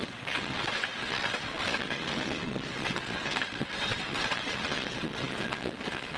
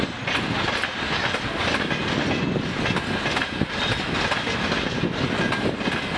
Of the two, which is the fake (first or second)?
first